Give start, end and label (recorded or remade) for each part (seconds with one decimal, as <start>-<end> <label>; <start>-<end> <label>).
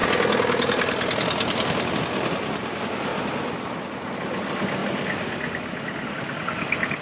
0.0-4.8 recorded; 4.8-6.1 remade; 6.1-7.0 recorded